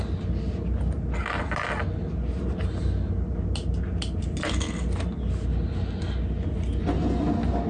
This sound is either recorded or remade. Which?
recorded